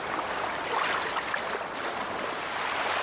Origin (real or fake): real